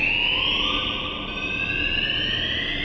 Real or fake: real